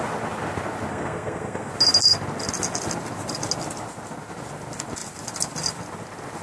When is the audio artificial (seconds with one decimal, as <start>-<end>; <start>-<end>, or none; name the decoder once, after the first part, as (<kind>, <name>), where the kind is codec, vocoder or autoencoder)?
0.9-1.7 (codec, SNAC)